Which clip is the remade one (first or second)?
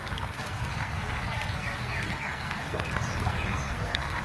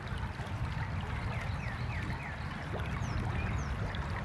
first